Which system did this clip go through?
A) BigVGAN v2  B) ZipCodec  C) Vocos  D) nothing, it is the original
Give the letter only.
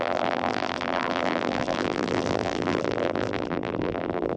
A